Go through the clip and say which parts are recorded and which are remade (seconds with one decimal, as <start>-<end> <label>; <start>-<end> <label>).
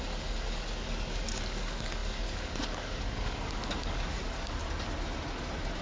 0.0-4.6 remade; 4.6-5.8 recorded